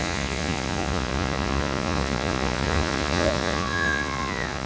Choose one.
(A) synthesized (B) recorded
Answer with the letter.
A